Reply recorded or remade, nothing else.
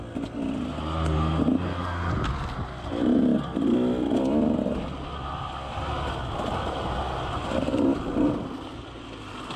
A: recorded